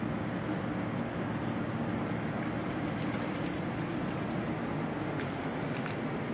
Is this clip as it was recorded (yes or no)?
yes